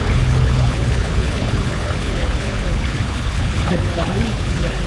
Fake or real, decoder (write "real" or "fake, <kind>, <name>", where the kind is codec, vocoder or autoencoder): fake, codec, HILCodec